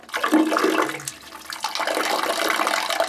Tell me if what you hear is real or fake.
real